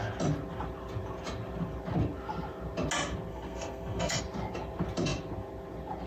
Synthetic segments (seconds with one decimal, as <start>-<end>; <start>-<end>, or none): 3.3-4.2

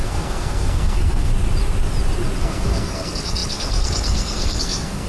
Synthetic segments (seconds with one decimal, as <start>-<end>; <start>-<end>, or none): 0.0-1.3; 2.4-5.1